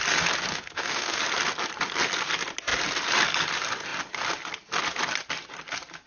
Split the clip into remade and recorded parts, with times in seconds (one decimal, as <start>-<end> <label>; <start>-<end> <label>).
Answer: 0.0-0.5 recorded; 0.5-1.2 remade; 1.2-6.1 recorded